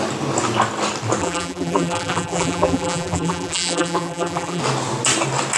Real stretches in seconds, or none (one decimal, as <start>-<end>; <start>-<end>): 0.0-1.2; 4.6-5.6